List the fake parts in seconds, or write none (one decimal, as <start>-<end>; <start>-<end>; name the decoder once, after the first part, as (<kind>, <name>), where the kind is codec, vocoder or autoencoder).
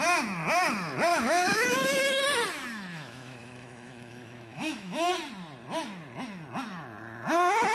1.1-2.2 (autoencoder, DAC-VAE); 2.9-5.1